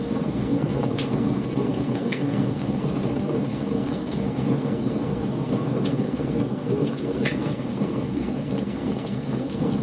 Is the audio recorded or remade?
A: remade